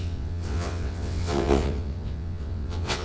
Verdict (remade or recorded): remade